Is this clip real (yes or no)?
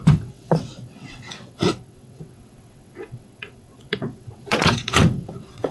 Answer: no